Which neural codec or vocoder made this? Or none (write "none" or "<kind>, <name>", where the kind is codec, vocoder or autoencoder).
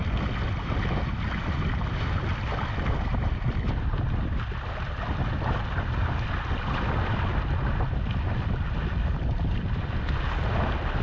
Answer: none